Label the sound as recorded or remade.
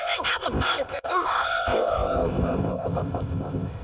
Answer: remade